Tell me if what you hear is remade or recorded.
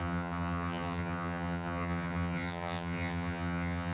remade